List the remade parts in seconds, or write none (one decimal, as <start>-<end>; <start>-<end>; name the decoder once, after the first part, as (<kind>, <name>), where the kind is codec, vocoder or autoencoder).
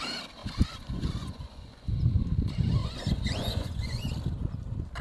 0.4-1.9 (vocoder, Vocos); 2.8-4.1